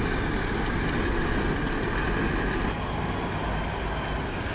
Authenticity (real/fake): real